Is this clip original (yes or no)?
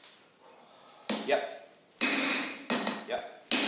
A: yes